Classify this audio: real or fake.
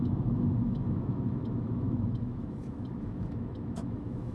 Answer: fake